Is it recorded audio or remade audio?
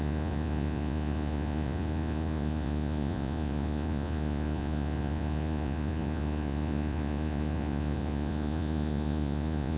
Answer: remade